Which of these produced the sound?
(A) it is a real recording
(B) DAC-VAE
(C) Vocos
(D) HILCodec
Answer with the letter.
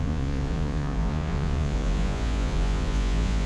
C